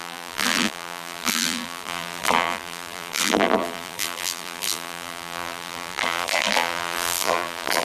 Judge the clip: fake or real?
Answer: fake